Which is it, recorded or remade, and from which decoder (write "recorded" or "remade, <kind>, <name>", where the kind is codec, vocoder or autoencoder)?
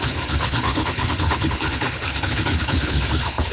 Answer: remade, codec, HILCodec